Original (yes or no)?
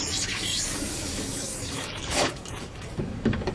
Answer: no